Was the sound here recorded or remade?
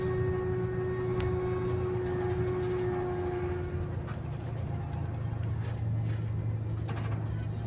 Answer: recorded